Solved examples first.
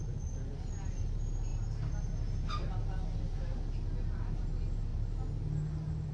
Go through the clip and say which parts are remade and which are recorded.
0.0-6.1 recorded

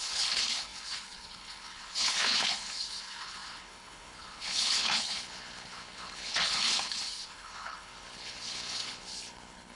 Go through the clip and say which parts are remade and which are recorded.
0.0-9.7 remade

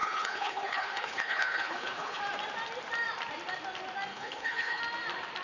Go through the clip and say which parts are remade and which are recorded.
0.0-2.2 remade; 2.2-4.1 recorded; 4.1-4.8 remade; 4.8-5.4 recorded